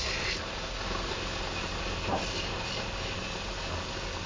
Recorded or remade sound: recorded